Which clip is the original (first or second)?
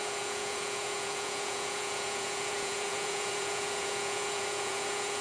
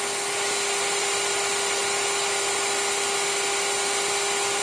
second